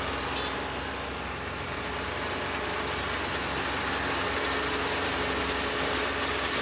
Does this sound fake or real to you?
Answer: real